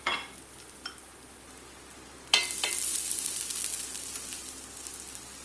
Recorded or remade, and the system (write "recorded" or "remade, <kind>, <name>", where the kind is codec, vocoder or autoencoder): recorded